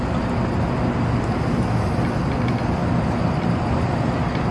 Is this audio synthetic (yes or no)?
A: no